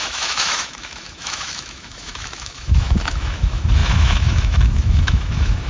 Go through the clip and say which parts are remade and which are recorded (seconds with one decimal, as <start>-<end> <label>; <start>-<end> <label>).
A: 0.0-5.7 remade